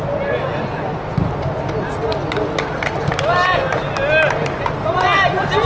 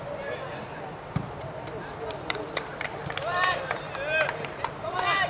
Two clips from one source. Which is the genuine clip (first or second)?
first